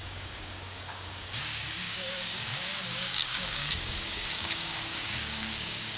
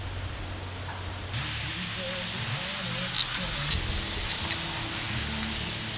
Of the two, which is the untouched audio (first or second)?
second